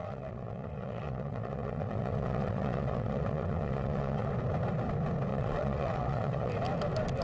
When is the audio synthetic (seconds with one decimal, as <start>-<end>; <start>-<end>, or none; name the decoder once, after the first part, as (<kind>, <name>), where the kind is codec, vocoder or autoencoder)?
0.0-4.3 (vocoder, WaveNeXt); 5.3-6.5